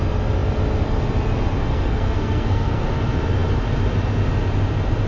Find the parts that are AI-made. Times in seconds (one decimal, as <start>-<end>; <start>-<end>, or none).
1.7-2.9